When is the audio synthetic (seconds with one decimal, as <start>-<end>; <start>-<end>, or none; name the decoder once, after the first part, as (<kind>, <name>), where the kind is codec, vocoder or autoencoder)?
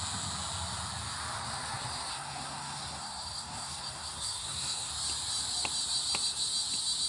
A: 2.1-4.9 (codec, SNAC)